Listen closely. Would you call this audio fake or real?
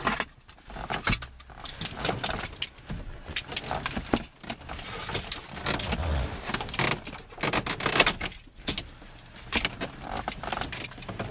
real